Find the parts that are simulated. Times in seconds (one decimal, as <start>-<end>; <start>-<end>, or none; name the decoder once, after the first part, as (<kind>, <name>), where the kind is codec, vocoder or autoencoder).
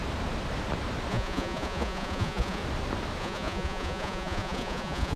1.1-2.6 (vocoder, Vocos); 3.2-5.2